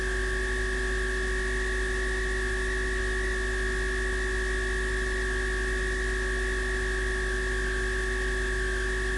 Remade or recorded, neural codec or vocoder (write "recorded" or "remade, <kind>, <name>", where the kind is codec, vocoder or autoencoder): recorded